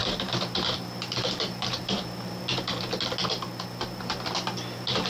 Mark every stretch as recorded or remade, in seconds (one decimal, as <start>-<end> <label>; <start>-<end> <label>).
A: 0.0-2.4 remade; 2.4-5.1 recorded